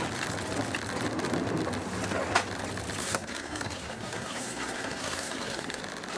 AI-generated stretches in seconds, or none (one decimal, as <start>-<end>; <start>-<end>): 3.0-5.8